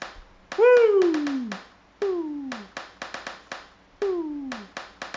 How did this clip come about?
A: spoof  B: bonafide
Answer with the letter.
B